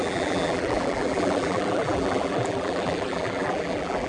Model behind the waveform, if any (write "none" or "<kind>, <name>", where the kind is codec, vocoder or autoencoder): vocoder, BigVGAN v2